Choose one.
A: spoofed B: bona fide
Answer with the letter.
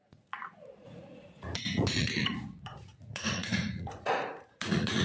A